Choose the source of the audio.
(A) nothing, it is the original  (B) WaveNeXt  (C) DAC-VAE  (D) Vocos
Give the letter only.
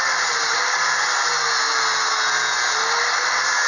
A